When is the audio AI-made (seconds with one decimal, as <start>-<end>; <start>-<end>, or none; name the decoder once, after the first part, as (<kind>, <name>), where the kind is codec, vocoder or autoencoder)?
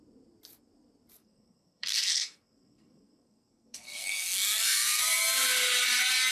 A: 1.2-5.0 (codec, SNAC)